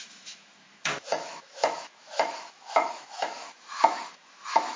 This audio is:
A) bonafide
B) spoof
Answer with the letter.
B